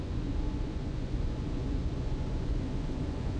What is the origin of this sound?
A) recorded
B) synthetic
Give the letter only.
B